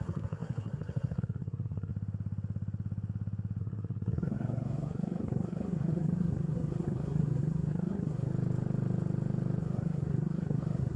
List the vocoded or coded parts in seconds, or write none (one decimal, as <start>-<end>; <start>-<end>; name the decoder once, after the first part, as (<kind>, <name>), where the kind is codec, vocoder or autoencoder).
0.0-1.9 (codec, SNAC); 3.6-8.3; 9.6-11.0